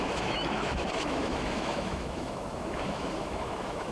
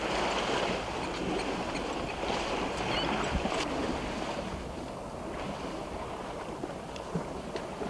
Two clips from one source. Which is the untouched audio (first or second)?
second